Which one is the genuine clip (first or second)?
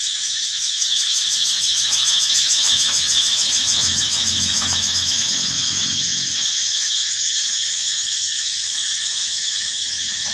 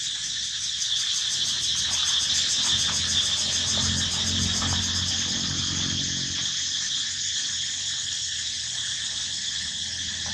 second